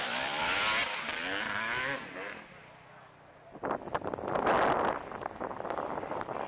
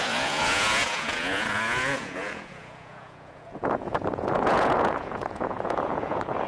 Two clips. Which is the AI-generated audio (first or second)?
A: second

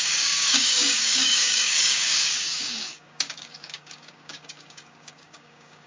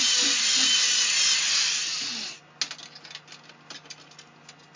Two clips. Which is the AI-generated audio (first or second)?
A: first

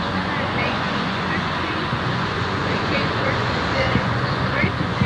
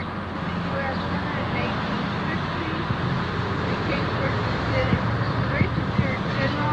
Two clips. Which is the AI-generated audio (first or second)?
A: first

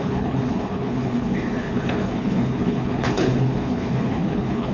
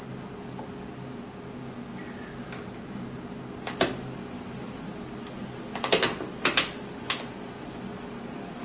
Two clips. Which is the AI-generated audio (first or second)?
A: first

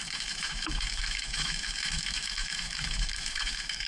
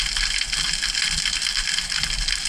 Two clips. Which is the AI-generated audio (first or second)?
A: first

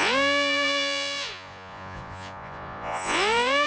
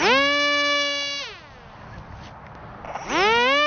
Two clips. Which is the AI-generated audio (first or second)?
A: first